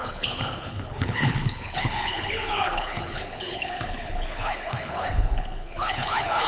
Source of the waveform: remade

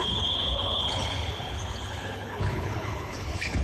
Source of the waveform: remade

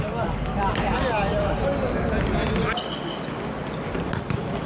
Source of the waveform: recorded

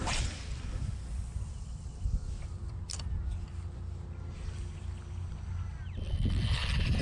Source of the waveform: recorded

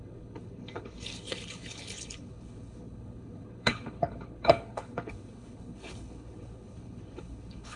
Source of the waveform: remade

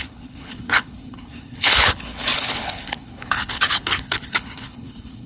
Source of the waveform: remade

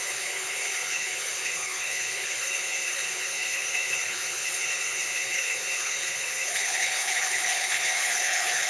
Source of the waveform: remade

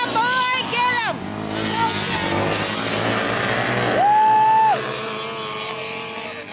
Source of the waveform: recorded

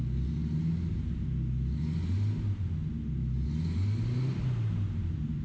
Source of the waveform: recorded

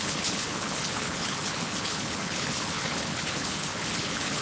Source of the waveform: remade